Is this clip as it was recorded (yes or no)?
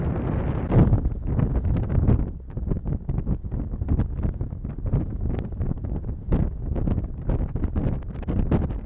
yes